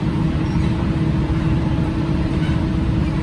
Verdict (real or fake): fake